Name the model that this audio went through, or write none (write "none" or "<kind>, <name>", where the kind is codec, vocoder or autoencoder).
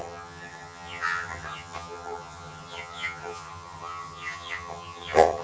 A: vocoder, HiFi-GAN